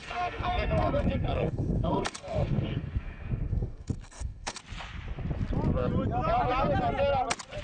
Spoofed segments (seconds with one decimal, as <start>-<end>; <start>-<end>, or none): 0.0-4.6